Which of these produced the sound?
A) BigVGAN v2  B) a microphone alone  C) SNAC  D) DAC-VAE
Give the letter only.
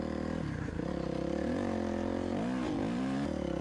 B